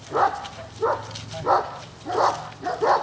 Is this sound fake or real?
real